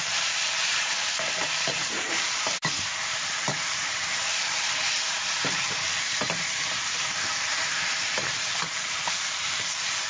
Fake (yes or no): yes